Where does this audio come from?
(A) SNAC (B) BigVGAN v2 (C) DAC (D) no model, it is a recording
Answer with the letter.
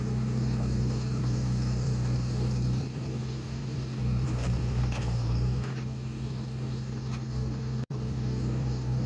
C